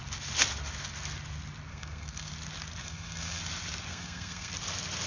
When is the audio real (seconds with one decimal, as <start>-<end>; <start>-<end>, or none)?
0.0-1.7; 2.3-2.8; 3.4-3.9; 4.5-5.1